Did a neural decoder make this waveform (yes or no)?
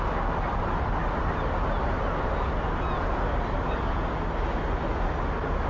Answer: no